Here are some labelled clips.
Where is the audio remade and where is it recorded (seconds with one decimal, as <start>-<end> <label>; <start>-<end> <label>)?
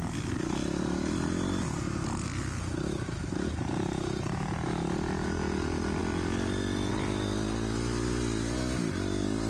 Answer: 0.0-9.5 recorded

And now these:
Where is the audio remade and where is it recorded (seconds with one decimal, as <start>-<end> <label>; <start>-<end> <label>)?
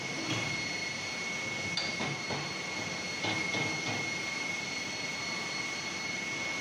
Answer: 0.0-6.6 recorded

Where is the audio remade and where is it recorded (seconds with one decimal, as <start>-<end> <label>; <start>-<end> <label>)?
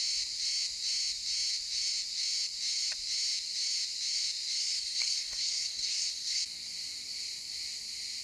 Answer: 0.0-4.6 recorded; 4.6-6.4 remade; 6.4-8.2 recorded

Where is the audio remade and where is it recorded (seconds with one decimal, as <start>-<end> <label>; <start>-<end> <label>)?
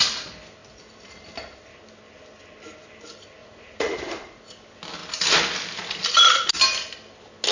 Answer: 0.0-3.4 recorded; 3.4-4.4 remade; 4.4-7.5 recorded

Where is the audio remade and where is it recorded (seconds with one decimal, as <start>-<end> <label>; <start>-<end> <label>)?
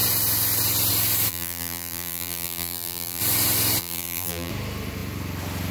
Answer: 0.0-1.3 recorded; 1.3-3.2 remade; 3.2-3.8 recorded; 3.8-4.5 remade; 4.5-5.7 recorded